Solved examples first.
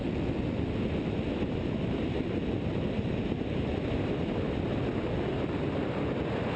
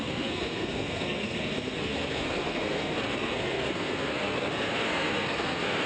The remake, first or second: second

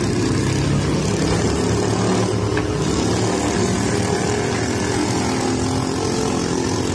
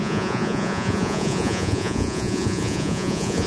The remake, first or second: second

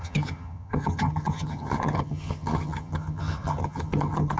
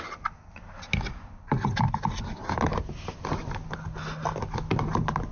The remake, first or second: first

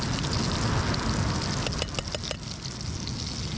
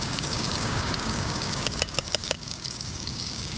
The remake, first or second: second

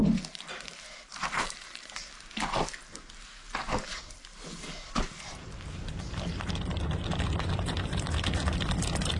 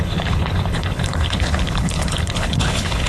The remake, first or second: second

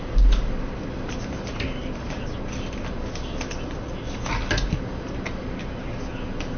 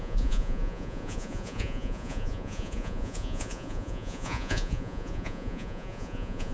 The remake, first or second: second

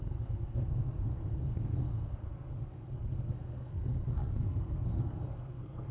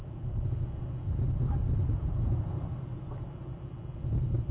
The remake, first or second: first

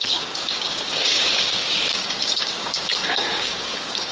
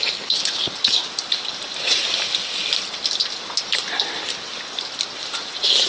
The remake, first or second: first